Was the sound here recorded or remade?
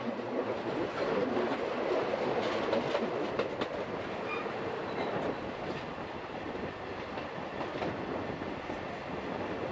recorded